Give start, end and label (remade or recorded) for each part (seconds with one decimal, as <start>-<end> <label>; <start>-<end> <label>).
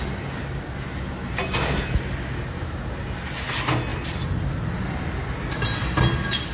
0.0-6.5 recorded